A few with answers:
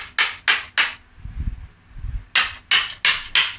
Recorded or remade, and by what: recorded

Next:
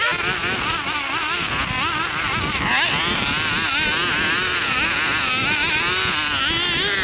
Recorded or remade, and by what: recorded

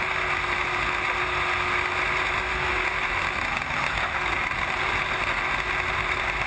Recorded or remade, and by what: recorded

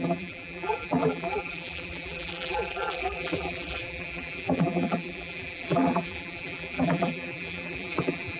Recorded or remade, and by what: remade, vocoder, BigVGAN v2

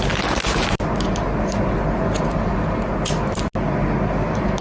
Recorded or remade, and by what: recorded